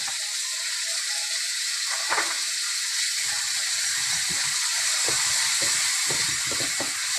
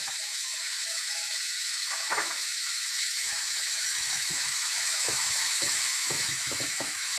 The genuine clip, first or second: first